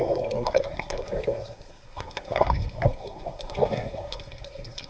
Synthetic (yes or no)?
yes